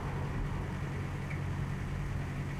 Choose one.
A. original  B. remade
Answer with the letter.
A